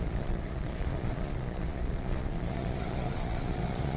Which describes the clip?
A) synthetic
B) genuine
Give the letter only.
A